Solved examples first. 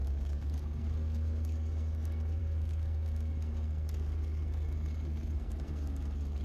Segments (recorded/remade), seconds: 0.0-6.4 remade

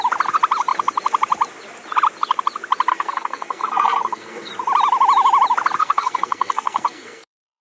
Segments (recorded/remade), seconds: 0.0-2.9 recorded; 2.9-4.5 remade; 4.5-5.8 recorded; 5.8-7.6 remade

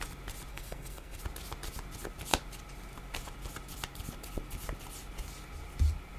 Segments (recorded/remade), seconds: 0.0-0.5 recorded; 0.5-1.2 remade; 1.2-6.2 recorded